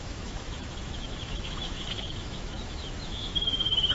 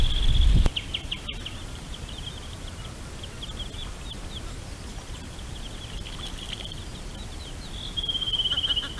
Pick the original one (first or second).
second